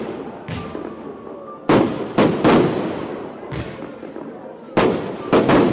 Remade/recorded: recorded